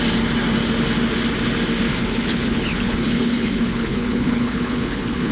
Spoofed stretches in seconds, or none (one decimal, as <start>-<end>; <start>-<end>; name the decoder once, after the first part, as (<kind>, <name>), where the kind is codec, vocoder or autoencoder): 1.9-5.3 (codec, HILCodec)